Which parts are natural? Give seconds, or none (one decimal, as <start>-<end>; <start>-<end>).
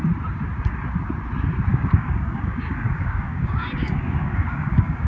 0.0-1.7